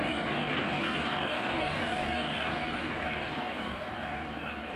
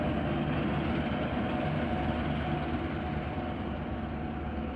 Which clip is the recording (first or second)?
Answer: second